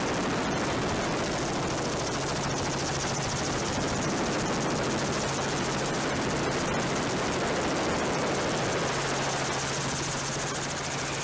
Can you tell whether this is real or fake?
real